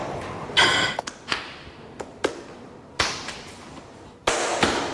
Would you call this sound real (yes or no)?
yes